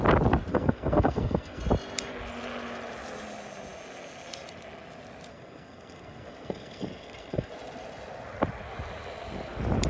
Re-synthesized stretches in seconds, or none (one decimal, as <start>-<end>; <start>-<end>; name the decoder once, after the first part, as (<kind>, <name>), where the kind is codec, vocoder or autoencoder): 0.5-1.6 (codec, SNAC); 5.3-7.5